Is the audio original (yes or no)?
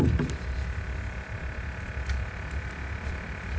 yes